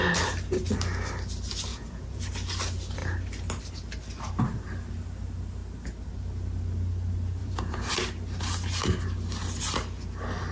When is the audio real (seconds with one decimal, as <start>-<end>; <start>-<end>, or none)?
0.0-1.7; 2.2-7.4; 7.9-10.5